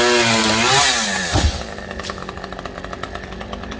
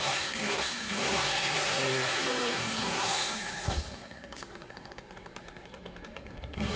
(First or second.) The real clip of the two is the first